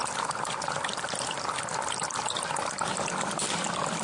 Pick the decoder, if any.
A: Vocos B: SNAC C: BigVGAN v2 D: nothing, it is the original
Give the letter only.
D